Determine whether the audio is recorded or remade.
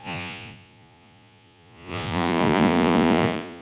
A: remade